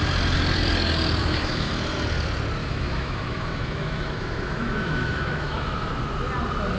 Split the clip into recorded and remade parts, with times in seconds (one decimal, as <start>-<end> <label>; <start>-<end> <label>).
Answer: 0.0-1.2 recorded; 1.2-1.7 remade; 1.7-2.6 recorded; 2.6-5.9 remade; 5.9-6.8 recorded

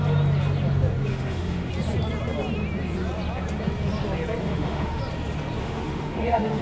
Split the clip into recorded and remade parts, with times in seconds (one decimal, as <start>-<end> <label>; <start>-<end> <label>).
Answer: 0.0-1.1 recorded; 1.1-1.7 remade; 1.7-4.4 recorded; 4.4-5.0 remade; 5.0-5.6 recorded; 5.6-6.6 remade